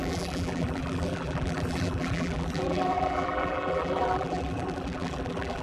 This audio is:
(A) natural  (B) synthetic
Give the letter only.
B